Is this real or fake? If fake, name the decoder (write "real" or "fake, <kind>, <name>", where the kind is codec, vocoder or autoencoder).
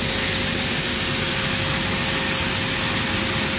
real